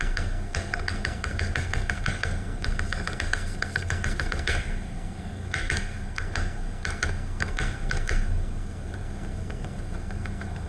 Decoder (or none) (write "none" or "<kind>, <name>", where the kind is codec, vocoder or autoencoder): codec, SNAC